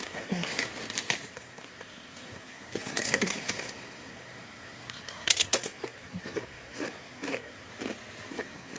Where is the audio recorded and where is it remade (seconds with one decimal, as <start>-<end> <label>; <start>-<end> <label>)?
0.0-0.7 remade; 0.7-1.3 recorded; 1.3-7.7 remade; 7.7-8.3 recorded; 8.3-8.8 remade